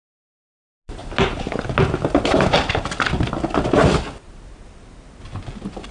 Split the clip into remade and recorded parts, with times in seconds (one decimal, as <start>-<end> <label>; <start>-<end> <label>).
0.0-5.9 recorded